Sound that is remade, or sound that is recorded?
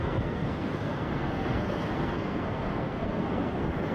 remade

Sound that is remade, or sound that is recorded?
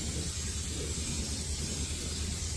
recorded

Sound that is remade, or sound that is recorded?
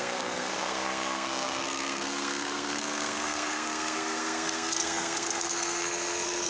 remade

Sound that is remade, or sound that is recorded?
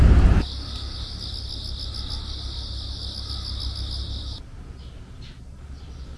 recorded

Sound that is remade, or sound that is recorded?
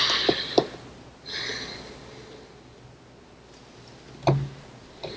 recorded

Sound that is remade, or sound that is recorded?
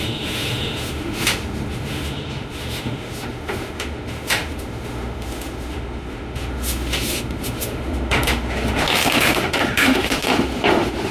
remade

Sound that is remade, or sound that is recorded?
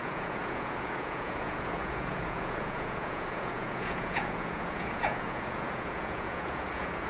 remade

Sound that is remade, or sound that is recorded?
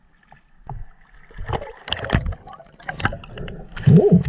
recorded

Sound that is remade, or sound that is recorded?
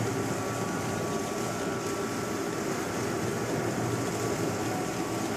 recorded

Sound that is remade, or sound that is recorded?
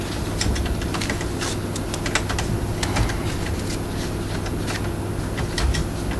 recorded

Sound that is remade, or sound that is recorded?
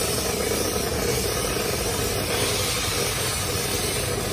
recorded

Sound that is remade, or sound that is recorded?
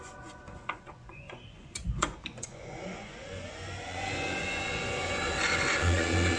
remade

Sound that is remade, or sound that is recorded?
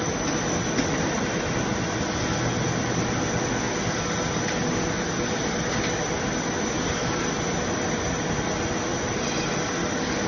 recorded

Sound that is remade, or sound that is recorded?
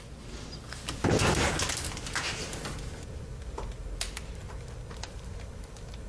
recorded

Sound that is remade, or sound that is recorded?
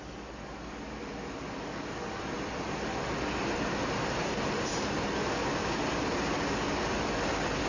recorded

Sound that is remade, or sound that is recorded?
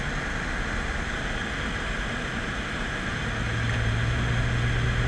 recorded